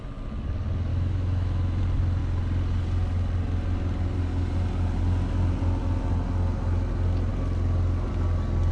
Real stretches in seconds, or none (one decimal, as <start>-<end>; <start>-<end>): 0.0-0.9; 1.8-8.7